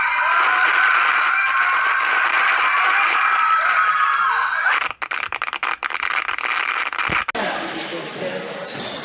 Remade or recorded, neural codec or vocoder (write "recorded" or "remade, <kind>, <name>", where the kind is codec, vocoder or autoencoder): recorded